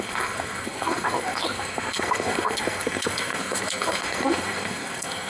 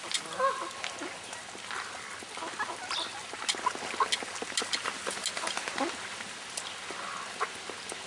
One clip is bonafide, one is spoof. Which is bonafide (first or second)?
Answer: second